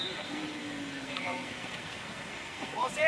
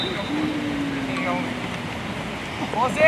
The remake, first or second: first